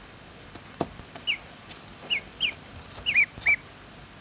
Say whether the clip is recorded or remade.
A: remade